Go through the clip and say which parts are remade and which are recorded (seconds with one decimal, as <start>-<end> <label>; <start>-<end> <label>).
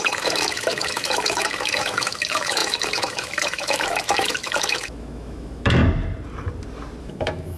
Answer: 0.0-5.8 remade; 5.8-7.0 recorded; 7.0-7.6 remade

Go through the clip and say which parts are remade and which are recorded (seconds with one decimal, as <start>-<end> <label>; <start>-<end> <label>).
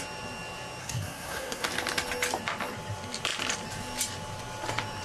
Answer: 0.0-0.8 recorded; 0.8-1.7 remade; 1.7-5.0 recorded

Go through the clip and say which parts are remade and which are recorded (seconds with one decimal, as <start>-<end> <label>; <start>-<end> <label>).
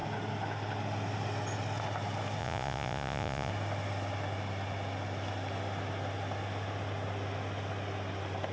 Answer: 0.0-2.4 recorded; 2.4-3.5 remade; 3.5-8.5 recorded